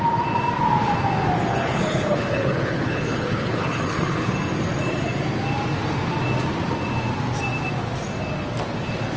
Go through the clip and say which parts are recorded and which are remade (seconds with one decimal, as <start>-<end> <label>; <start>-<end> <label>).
0.0-1.5 recorded; 1.5-4.3 remade; 4.3-9.2 recorded